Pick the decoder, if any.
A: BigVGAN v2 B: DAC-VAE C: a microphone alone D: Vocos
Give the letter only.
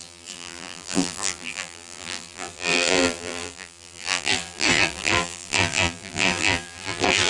A